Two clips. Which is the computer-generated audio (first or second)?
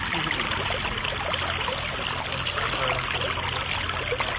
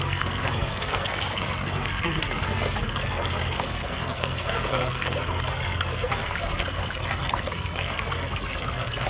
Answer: second